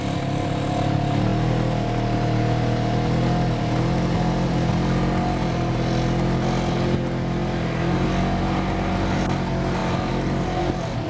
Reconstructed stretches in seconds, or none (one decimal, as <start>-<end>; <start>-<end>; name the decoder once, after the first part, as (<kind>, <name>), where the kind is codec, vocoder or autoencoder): none